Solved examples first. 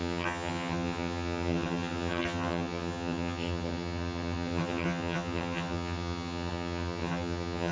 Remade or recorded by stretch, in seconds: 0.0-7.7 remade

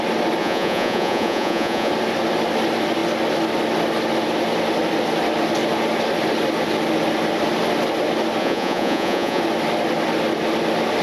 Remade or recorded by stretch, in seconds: 0.0-0.4 recorded; 0.4-1.9 remade; 1.9-8.4 recorded; 8.4-9.4 remade; 9.4-11.0 recorded